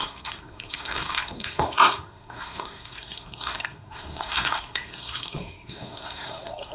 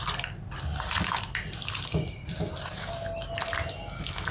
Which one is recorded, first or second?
second